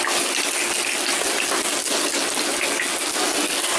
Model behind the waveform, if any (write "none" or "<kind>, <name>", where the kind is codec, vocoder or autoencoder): none